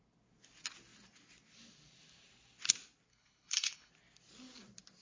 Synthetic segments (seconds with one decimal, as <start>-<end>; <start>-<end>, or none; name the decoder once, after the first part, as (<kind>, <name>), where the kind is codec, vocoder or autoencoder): 3.1-3.9 (codec, HILCodec)